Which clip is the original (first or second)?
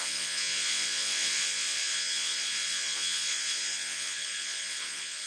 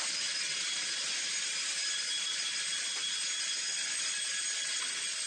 second